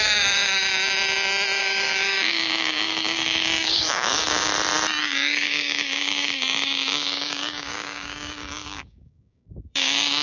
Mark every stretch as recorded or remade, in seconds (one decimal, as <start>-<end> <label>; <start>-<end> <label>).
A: 0.0-0.7 remade; 0.7-1.6 recorded; 1.6-4.5 remade; 4.5-5.0 recorded; 5.0-10.2 remade